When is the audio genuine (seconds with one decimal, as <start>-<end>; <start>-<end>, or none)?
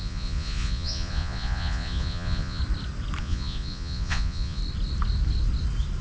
2.6-3.2; 4.6-6.0